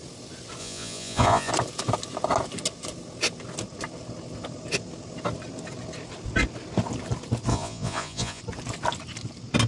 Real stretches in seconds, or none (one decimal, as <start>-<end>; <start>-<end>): 0.0-0.6; 1.5-7.5; 8.4-9.7